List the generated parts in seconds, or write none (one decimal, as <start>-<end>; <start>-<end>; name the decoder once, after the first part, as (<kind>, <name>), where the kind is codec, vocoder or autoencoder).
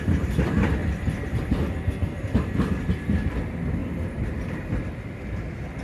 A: 0.8-1.6 (vocoder, BigVGAN v2); 3.8-4.6